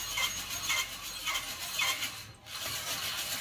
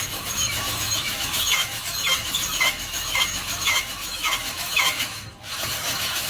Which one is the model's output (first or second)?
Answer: second